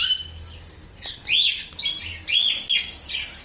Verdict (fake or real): real